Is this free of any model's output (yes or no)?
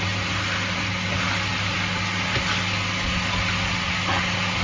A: yes